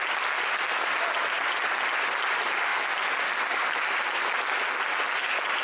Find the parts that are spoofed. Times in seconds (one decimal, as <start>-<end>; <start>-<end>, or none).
none

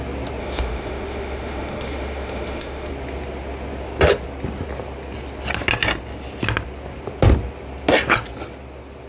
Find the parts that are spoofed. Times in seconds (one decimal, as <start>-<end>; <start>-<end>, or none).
0.4-2.9

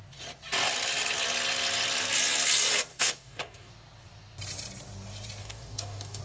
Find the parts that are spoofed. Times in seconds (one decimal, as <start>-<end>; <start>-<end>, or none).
2.9-3.7; 5.4-6.2

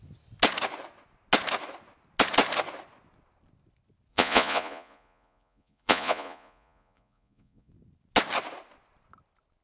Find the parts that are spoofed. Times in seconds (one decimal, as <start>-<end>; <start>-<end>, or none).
4.1-7.7

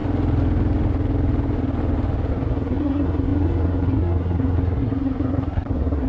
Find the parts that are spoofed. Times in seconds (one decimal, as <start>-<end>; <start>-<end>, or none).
2.3-6.1